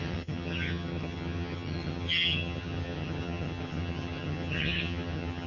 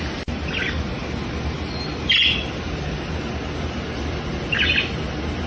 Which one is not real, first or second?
first